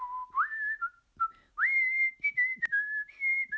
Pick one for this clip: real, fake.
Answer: real